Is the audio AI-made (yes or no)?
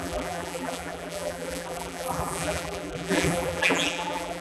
yes